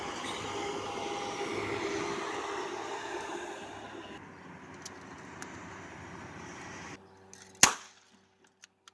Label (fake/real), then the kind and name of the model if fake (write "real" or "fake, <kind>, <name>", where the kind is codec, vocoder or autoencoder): real